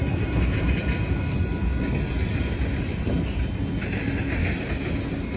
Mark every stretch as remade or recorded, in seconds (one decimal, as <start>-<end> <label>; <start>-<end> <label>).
0.0-0.8 remade; 0.8-4.4 recorded; 4.4-4.9 remade; 4.9-5.4 recorded